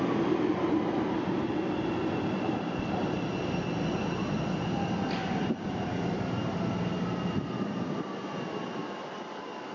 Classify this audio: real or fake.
real